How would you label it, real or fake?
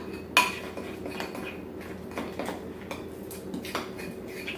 real